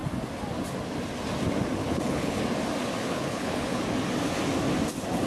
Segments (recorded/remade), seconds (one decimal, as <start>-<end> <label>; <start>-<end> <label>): 0.0-1.8 recorded; 1.8-2.4 remade; 2.4-3.0 recorded; 3.0-3.8 remade; 3.8-5.3 recorded